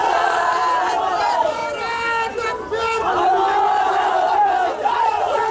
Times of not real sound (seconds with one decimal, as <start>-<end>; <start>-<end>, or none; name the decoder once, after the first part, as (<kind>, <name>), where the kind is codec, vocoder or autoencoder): 0.0-0.6 (vocoder, Vocos); 1.2-1.6; 4.7-5.5